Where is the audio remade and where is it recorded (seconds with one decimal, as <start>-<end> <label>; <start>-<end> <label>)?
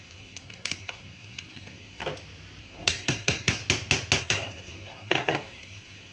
0.0-2.0 remade; 2.0-2.6 recorded; 2.6-3.6 remade; 3.6-4.2 recorded; 4.2-6.1 remade